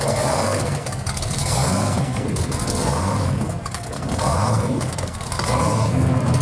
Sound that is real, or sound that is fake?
fake